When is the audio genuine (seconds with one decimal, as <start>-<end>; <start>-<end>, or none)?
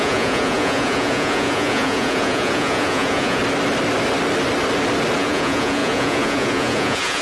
3.4-5.2